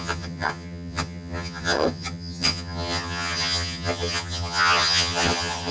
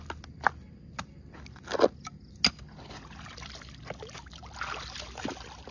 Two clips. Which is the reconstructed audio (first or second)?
first